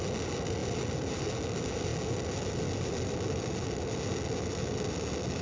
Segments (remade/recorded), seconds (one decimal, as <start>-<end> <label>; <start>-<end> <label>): 0.0-5.4 recorded